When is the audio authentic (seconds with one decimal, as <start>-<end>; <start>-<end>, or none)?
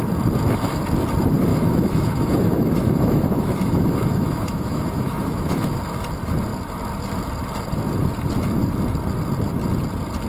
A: 0.0-1.5; 5.8-10.3